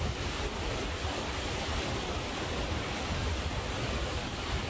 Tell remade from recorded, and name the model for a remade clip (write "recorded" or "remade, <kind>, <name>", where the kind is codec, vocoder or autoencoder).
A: recorded